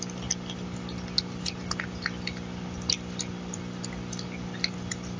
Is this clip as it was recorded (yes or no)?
yes